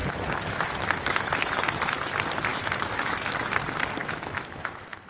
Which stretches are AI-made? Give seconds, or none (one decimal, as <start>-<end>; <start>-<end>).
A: 0.0-1.7; 2.5-3.1; 4.0-5.1